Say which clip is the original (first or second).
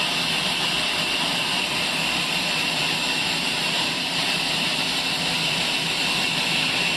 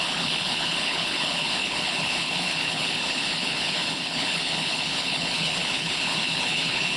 first